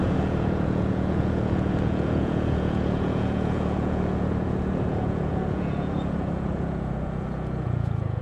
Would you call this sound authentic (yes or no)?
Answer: no